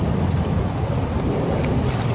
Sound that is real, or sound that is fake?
real